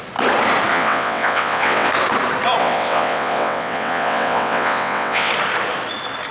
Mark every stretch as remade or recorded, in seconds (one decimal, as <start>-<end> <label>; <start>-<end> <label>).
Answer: 0.0-0.7 recorded; 0.7-1.9 remade; 1.9-2.6 recorded; 2.6-5.3 remade; 5.3-6.3 recorded

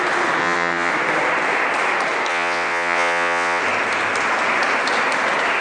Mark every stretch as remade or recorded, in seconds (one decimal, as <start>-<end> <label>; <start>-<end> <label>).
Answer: 0.0-0.4 recorded; 0.4-0.9 remade; 0.9-2.3 recorded; 2.3-3.6 remade; 3.6-5.6 recorded

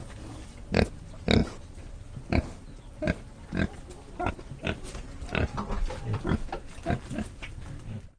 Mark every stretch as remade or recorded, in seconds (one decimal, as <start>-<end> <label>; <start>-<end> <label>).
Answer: 0.0-8.2 recorded

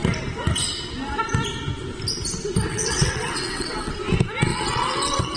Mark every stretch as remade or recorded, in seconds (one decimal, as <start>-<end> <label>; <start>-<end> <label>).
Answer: 0.0-2.7 recorded; 2.7-3.9 remade; 3.9-4.5 recorded; 4.5-5.4 remade

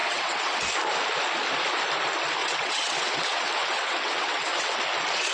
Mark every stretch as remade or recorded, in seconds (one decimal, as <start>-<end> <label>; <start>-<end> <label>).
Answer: 0.0-0.6 remade; 0.6-2.4 recorded; 2.4-4.8 remade; 4.8-5.3 recorded

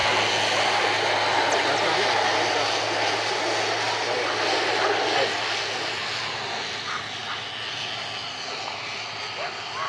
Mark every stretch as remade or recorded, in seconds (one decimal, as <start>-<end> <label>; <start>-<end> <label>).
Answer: 0.0-9.9 recorded

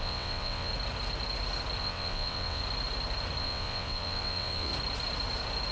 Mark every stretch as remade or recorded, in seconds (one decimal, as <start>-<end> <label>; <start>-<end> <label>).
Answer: 0.0-0.7 remade; 0.7-1.8 recorded; 1.8-2.6 remade; 2.6-3.4 recorded; 3.4-4.7 remade; 4.7-5.7 recorded

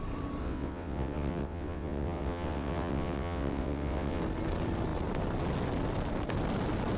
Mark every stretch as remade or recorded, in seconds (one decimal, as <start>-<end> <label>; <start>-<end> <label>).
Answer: 0.0-0.4 recorded; 0.4-4.2 remade; 4.2-7.0 recorded